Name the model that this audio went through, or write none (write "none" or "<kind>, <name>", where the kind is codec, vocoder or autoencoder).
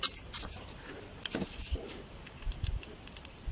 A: none